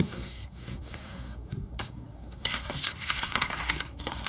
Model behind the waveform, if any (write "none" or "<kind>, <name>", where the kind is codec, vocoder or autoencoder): codec, SNAC